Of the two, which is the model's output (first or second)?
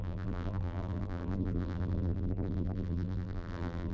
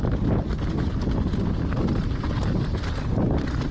first